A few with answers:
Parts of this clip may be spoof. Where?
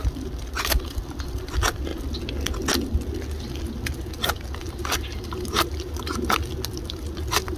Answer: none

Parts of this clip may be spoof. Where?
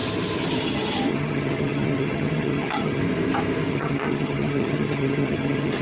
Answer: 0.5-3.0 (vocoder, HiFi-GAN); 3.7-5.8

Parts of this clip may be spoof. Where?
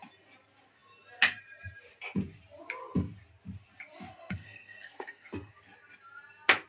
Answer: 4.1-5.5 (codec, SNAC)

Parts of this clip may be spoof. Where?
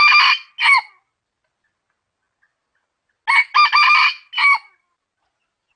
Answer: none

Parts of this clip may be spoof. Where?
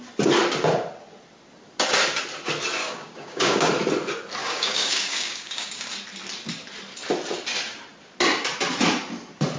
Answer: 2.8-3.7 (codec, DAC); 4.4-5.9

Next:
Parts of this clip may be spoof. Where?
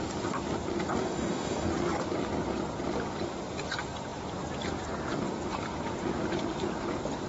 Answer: 1.0-1.7 (codec, DAC)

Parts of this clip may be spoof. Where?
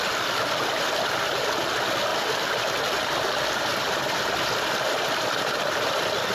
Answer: none